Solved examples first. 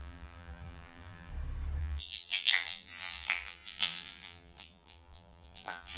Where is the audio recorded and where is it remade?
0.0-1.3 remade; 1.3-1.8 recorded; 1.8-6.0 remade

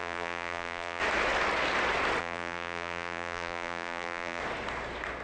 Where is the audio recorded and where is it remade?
0.0-1.0 remade; 1.0-2.2 recorded; 2.2-4.4 remade; 4.4-5.2 recorded

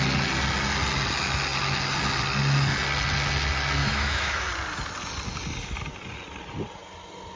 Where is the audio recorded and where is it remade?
0.0-3.8 recorded; 3.8-4.5 remade; 4.5-7.4 recorded

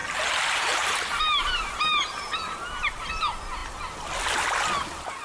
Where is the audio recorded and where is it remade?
0.0-3.1 remade; 3.1-5.2 recorded